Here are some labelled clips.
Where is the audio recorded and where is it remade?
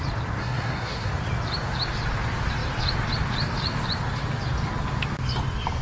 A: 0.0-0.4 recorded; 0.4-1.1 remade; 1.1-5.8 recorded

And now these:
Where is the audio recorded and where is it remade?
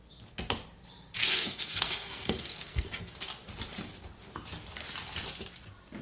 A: 0.0-1.2 recorded; 1.2-3.0 remade; 3.0-6.0 recorded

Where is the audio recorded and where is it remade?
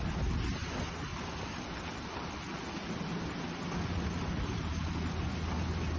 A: 0.0-6.0 recorded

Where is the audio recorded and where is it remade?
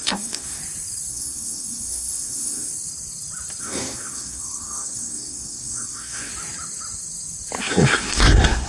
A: 0.0-0.6 remade; 0.6-1.1 recorded; 1.1-2.7 remade; 2.7-3.6 recorded; 3.6-6.3 remade; 6.3-7.6 recorded; 7.6-8.7 remade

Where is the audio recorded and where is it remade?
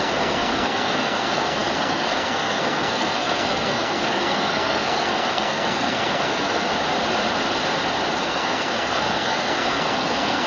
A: 0.0-6.7 remade; 6.7-8.2 recorded; 8.2-10.5 remade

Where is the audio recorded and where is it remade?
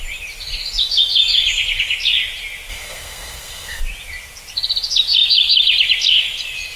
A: 0.0-2.7 recorded; 2.7-3.8 remade; 3.8-6.8 recorded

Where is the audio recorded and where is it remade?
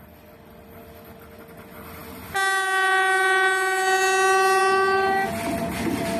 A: 0.0-6.2 recorded